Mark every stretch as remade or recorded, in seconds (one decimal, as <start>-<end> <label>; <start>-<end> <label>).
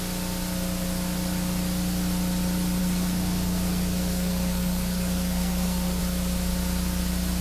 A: 0.0-2.8 recorded; 2.8-6.0 remade; 6.0-7.4 recorded